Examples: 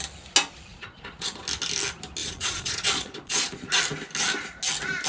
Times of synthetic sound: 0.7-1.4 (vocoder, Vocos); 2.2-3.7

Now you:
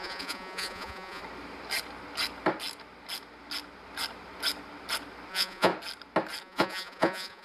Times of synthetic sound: 0.0-1.2 (vocoder, Vocos); 5.3-5.7; 6.4-7.4

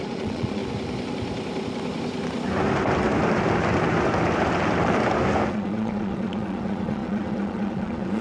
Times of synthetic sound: 0.0-0.6 (vocoder, Vocos); 5.5-8.2